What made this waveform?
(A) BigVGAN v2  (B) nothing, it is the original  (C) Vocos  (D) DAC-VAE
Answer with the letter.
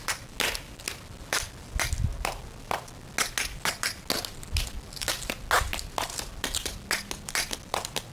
B